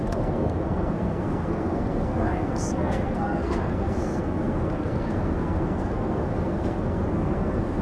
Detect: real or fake fake